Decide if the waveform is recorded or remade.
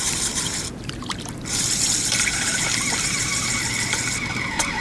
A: remade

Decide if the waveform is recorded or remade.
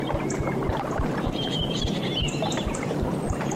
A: remade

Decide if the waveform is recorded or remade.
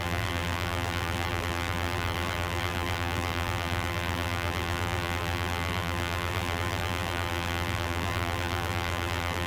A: remade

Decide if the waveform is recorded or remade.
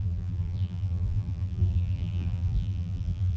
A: remade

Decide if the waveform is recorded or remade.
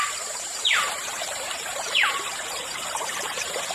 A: remade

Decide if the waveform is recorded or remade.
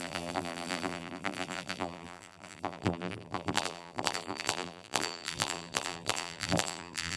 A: remade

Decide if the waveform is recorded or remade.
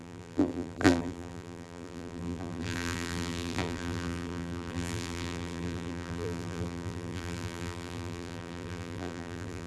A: remade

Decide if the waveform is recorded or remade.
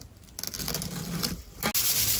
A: recorded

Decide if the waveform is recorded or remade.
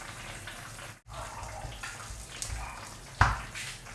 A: recorded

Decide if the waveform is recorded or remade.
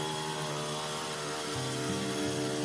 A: recorded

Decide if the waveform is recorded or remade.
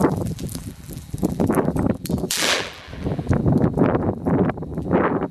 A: remade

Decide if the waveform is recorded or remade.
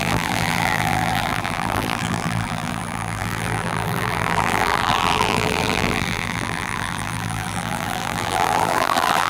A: remade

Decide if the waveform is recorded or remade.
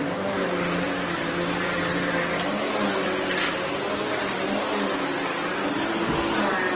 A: recorded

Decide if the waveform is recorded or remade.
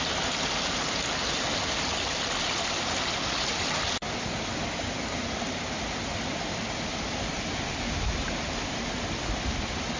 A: recorded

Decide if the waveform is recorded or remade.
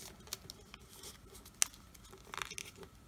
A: recorded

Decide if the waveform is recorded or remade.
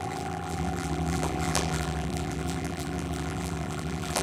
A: remade